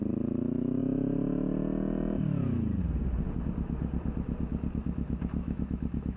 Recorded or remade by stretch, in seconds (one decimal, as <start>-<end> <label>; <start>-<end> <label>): 0.0-5.4 recorded; 5.4-6.2 remade